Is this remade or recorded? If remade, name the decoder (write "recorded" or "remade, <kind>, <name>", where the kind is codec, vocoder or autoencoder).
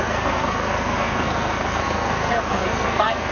remade, codec, SNAC